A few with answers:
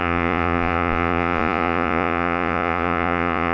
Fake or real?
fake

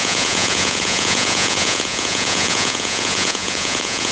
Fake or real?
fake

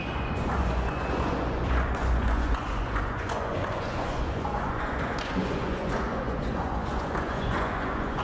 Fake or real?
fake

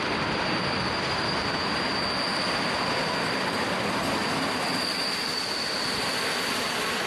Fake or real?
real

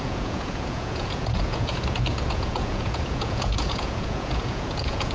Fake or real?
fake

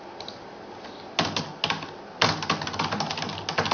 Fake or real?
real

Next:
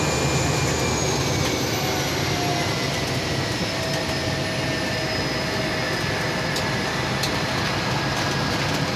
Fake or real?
real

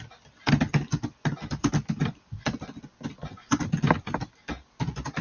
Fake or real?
real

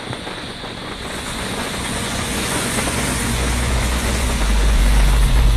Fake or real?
fake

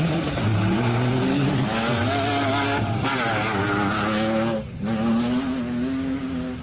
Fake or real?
real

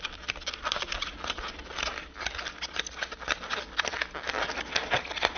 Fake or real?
real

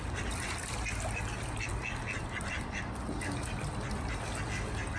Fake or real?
real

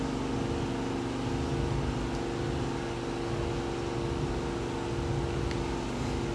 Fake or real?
real